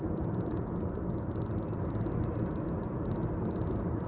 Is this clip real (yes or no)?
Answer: yes